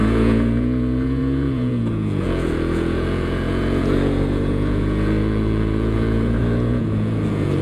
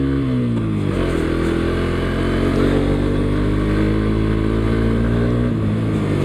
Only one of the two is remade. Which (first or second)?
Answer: first